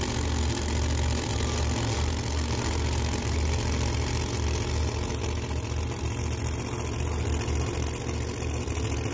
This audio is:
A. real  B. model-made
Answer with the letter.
A